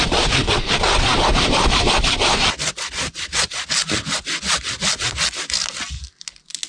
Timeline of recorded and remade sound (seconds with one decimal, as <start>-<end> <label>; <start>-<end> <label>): 0.0-6.7 recorded